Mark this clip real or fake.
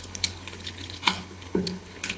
fake